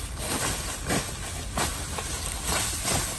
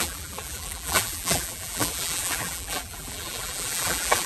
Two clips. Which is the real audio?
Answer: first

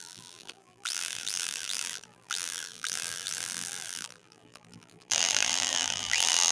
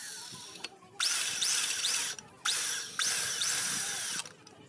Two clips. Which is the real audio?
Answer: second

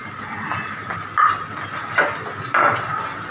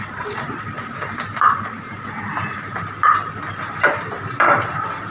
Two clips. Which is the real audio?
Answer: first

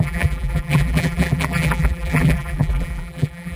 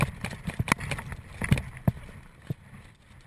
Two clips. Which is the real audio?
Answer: second